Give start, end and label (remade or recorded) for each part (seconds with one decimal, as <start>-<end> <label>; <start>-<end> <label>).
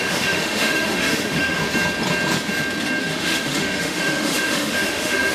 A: 0.0-1.6 remade; 1.6-3.0 recorded; 3.0-5.3 remade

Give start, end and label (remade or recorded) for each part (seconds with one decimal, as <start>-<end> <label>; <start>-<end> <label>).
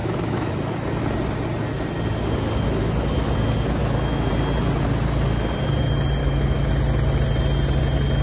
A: 0.0-0.5 remade; 0.5-3.8 recorded; 3.8-4.3 remade; 4.3-6.2 recorded; 6.2-6.7 remade; 6.7-8.2 recorded